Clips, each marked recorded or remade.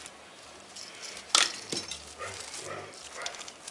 recorded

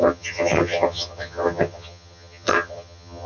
remade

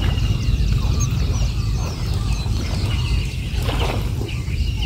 recorded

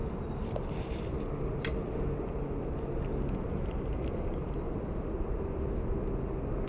recorded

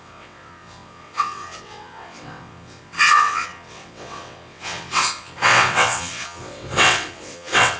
remade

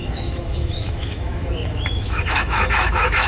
remade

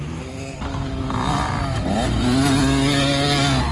recorded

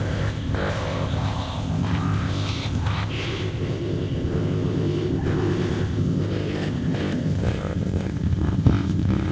remade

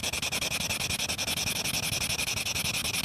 recorded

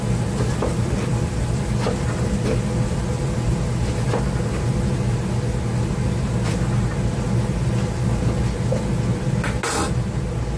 recorded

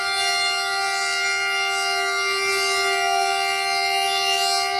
recorded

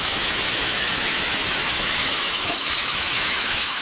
remade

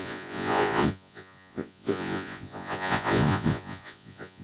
remade